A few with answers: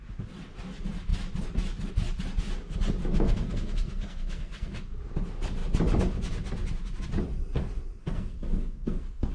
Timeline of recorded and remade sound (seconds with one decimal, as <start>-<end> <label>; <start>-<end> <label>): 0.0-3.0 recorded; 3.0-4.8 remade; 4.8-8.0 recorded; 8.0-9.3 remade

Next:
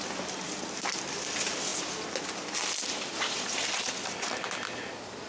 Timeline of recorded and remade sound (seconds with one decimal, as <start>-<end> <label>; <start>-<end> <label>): 0.0-5.3 recorded

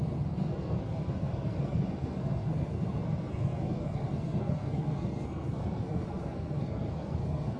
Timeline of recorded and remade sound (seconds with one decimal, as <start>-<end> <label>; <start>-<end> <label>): 0.0-7.6 remade

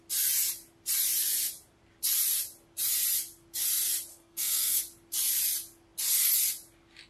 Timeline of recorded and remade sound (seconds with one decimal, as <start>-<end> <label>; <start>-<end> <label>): 0.0-4.1 recorded; 4.1-4.8 remade; 4.8-7.1 recorded

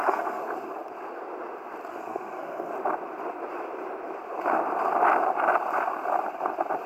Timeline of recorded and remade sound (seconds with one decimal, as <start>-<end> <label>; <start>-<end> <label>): 0.0-0.4 remade; 0.4-1.9 recorded; 1.9-2.7 remade; 2.7-6.9 recorded

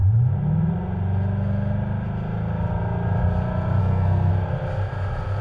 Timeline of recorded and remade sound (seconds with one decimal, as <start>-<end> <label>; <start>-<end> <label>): 0.0-3.8 recorded; 3.8-4.3 remade; 4.3-5.4 recorded

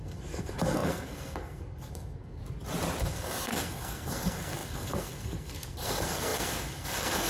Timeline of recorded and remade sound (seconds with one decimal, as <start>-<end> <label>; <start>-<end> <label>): 0.0-2.4 remade; 2.4-3.0 recorded; 3.0-7.3 remade